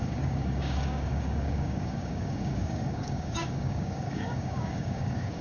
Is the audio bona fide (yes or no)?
no